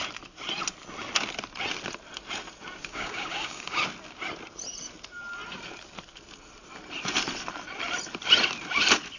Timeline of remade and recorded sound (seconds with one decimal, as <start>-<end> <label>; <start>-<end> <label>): 0.0-2.8 recorded; 2.8-3.8 remade; 3.8-9.2 recorded